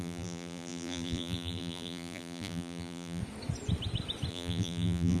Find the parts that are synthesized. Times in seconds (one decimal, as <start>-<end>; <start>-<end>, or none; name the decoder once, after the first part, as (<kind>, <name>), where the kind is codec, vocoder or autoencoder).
0.0-3.2 (vocoder, BigVGAN v2); 4.3-5.2